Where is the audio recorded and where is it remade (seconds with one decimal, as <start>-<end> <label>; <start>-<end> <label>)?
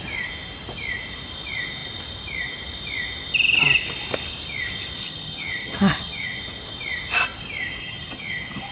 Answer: 0.0-5.0 recorded; 5.0-6.4 remade; 6.4-7.8 recorded; 7.8-8.7 remade